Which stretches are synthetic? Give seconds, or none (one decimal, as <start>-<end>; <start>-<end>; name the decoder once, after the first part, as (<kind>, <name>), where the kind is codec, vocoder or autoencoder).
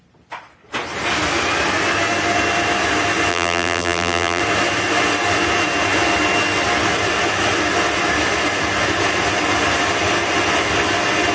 3.3-4.4 (vocoder, BigVGAN v2)